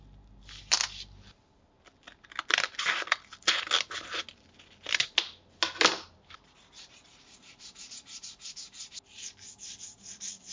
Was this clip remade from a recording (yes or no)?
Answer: no